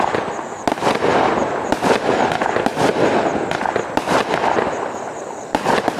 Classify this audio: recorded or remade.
recorded